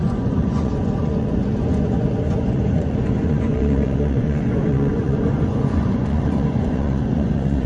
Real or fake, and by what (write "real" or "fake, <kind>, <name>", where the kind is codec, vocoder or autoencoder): fake, vocoder, Vocos